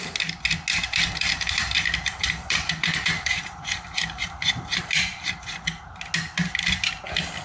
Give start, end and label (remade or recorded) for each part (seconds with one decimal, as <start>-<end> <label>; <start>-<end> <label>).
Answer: 0.0-0.8 recorded; 0.8-5.2 remade; 5.2-7.4 recorded